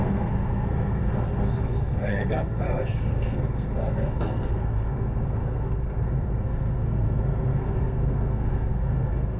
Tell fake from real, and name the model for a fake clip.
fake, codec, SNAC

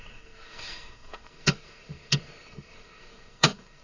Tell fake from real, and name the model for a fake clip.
fake, codec, SNAC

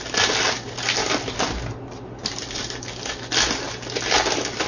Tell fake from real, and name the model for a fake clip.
real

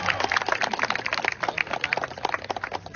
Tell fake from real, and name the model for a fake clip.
real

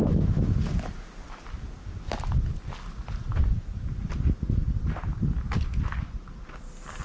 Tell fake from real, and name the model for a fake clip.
real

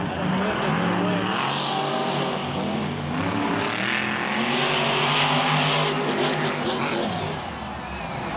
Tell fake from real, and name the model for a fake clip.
real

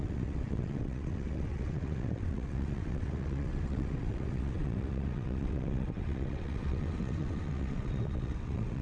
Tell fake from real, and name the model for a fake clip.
fake, vocoder, WaveNeXt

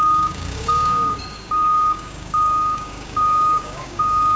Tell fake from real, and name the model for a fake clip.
fake, codec, DAC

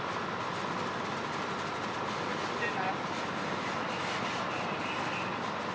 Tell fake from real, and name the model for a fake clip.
real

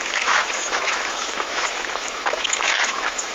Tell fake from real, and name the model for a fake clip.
fake, autoencoder, DAC-VAE